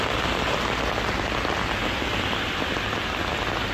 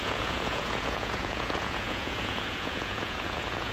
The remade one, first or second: second